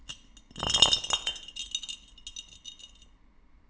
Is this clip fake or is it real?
real